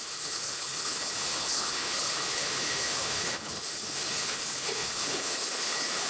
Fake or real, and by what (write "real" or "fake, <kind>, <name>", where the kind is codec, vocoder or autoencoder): fake, codec, HILCodec